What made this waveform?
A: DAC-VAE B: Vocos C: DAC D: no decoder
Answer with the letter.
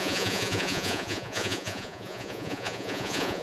B